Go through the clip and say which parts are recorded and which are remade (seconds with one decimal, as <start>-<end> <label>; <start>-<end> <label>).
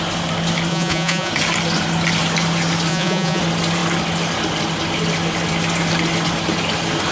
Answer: 0.0-0.7 recorded; 0.7-1.3 remade; 1.3-2.9 recorded; 2.9-3.4 remade; 3.4-7.1 recorded